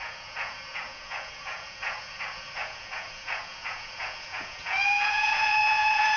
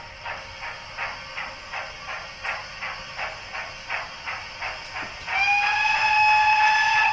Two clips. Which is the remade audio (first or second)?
first